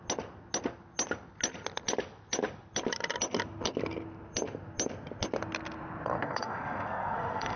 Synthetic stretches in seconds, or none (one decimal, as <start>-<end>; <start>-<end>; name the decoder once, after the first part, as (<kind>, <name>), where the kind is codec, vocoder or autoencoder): 6.2-7.6 (codec, SNAC)